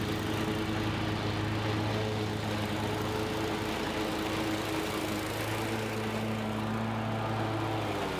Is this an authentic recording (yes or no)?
yes